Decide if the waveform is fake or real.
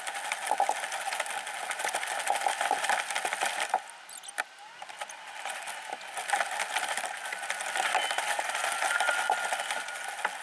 real